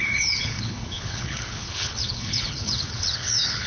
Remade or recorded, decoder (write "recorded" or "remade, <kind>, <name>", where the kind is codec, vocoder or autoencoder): remade, codec, HILCodec